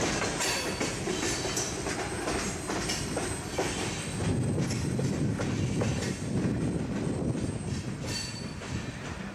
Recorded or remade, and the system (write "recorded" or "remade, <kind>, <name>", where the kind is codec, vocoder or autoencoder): recorded